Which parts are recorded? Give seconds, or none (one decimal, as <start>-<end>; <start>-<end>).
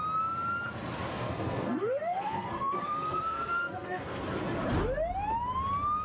0.0-1.1; 4.2-6.0